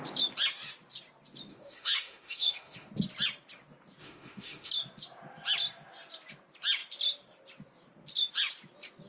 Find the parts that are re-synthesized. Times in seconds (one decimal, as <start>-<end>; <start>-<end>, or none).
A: 1.5-2.9; 4.0-4.7